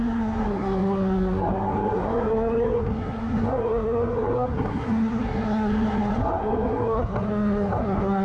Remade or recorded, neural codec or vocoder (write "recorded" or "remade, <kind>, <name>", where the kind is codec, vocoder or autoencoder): remade, codec, SNAC